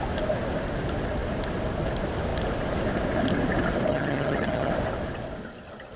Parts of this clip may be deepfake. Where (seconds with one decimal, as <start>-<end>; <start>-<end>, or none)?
3.9-4.7